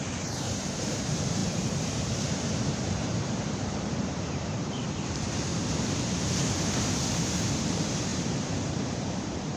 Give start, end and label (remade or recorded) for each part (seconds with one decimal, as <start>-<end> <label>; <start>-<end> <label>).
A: 0.0-5.5 remade; 5.5-6.8 recorded; 6.8-8.1 remade; 8.1-9.1 recorded; 9.1-9.6 remade